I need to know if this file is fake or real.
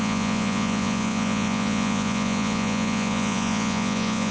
fake